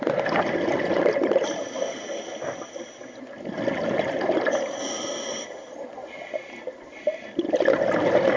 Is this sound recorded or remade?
recorded